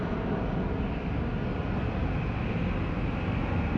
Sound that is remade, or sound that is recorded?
recorded